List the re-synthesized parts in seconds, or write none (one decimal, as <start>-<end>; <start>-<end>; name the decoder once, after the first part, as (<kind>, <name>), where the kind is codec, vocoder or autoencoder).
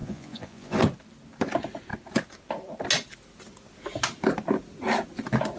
0.0-0.8 (vocoder, Vocos)